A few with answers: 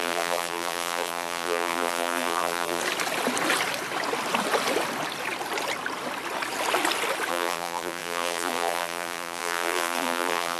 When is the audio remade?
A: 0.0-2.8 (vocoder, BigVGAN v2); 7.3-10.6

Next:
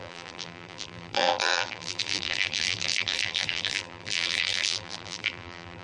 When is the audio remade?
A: 0.0-5.8 (vocoder, BigVGAN v2)

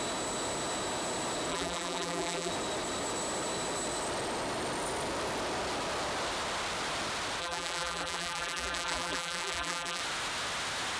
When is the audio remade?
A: 1.5-2.5 (vocoder, BigVGAN v2); 7.4-10.0

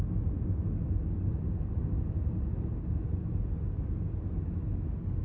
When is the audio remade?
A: none

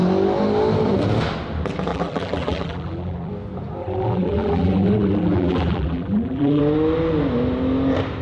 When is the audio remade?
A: 1.9-3.3 (vocoder, BigVGAN v2); 3.8-6.6